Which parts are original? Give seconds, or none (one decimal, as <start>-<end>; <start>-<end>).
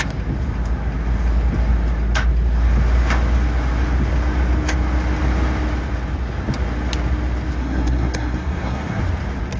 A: 0.0-7.6; 9.0-9.6